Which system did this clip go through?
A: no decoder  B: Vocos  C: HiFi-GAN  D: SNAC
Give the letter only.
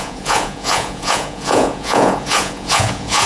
B